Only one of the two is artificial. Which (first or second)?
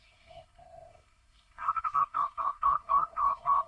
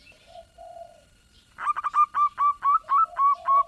first